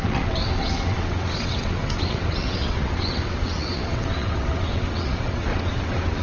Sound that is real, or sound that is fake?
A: fake